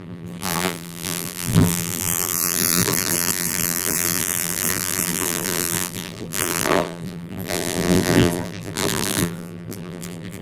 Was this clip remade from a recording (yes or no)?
yes